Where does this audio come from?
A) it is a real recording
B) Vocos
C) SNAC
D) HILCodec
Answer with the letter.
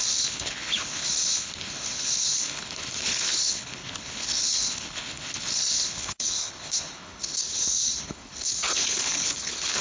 D